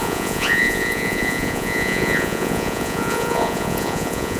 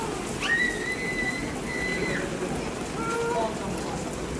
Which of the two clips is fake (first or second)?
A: first